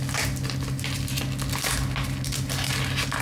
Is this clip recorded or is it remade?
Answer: recorded